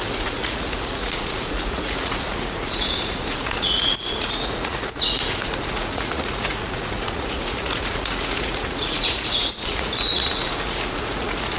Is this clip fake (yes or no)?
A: yes